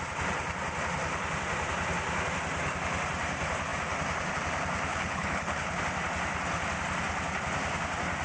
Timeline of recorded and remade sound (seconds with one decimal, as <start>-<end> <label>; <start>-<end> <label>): 0.0-4.9 recorded; 4.9-5.8 remade; 5.8-8.2 recorded